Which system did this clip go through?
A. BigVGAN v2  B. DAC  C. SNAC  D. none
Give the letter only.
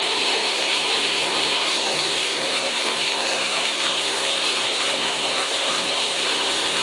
C